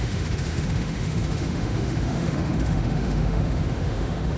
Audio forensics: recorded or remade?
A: remade